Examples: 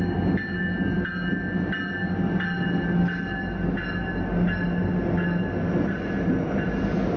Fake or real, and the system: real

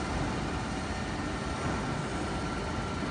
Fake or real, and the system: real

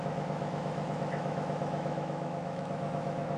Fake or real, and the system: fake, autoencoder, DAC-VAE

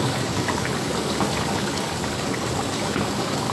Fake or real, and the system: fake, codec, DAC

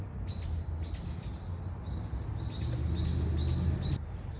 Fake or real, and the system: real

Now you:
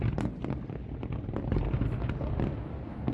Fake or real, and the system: real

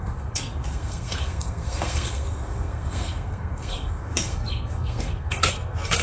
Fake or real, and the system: fake, codec, SNAC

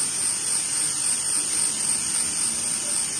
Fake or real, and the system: real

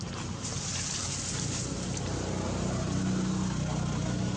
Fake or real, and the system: real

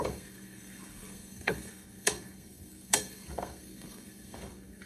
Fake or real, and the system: fake, codec, SNAC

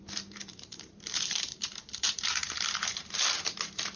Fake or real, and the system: fake, vocoder, BigVGAN v2